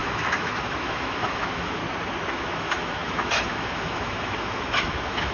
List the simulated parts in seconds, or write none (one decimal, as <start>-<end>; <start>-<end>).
0.0-1.8; 2.3-5.3